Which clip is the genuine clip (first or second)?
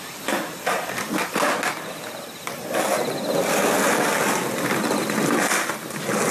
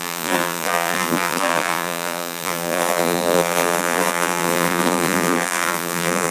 first